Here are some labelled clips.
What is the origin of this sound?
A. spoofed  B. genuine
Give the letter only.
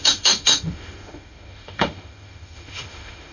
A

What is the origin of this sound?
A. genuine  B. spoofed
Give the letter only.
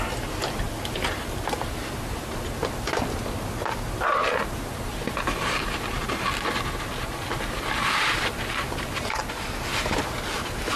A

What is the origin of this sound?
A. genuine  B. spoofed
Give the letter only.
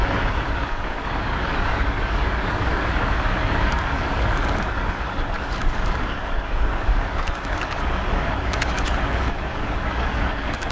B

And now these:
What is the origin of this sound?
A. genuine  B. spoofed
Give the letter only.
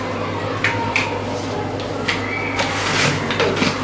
A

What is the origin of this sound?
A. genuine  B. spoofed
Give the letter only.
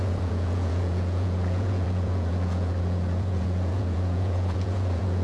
B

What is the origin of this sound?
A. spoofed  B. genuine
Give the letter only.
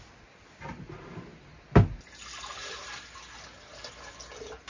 B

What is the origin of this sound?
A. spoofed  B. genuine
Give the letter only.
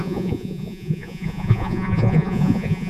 A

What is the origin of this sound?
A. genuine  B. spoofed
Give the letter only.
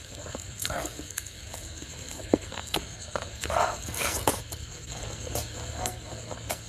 B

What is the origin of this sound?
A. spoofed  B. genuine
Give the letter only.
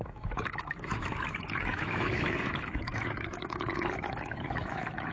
A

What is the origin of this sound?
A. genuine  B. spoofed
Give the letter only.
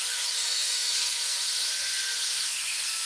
B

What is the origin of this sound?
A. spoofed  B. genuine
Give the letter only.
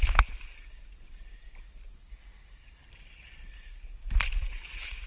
B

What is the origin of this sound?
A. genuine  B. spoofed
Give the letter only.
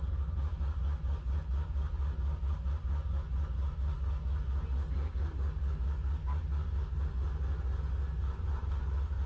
A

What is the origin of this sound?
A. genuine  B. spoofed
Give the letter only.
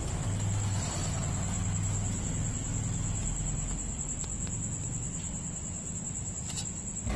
A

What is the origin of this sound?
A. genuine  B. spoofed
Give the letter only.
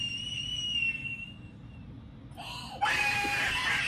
A